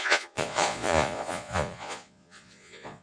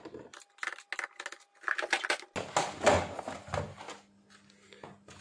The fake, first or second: first